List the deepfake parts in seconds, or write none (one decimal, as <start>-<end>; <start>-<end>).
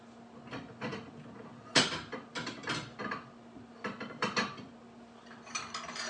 none